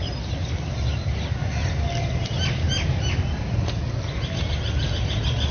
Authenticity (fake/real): real